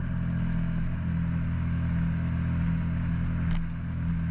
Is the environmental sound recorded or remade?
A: recorded